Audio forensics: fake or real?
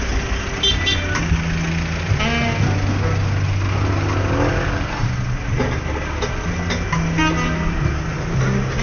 real